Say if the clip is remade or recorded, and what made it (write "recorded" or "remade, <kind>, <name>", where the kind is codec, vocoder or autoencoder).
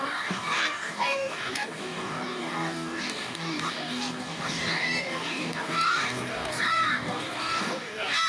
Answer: remade, codec, DAC